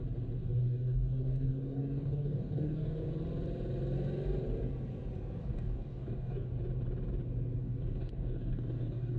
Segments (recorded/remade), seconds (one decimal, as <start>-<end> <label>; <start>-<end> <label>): 0.0-0.4 recorded; 0.4-3.1 remade; 3.1-5.4 recorded; 5.4-6.5 remade; 6.5-7.6 recorded; 7.6-9.2 remade